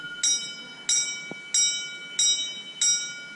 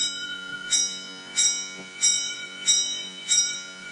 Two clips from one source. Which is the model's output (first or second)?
second